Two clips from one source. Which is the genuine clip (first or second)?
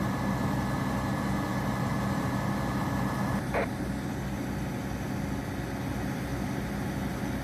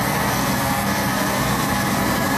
first